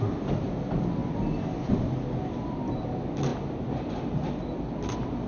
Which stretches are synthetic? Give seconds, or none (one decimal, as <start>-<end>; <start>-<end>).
none